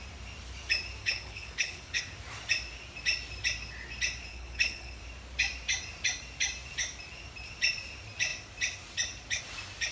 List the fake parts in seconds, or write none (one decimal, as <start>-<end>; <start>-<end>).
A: 1.0-2.0; 4.3-5.0